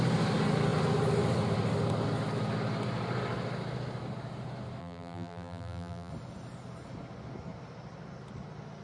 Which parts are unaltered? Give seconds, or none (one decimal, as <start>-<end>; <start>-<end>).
0.0-4.8; 6.1-8.8